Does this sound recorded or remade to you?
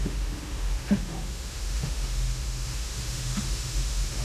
remade